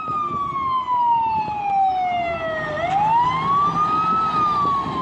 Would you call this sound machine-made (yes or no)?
no